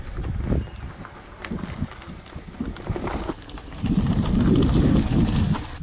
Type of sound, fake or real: real